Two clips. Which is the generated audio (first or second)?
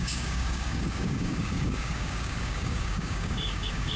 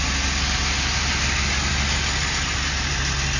first